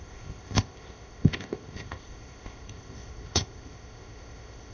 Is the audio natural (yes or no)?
no